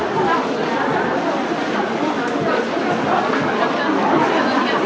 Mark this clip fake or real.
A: real